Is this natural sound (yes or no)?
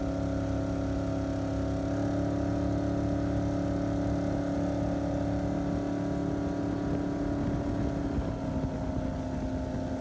yes